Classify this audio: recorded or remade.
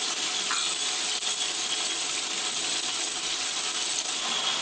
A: recorded